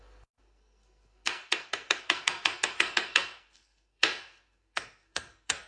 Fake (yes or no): yes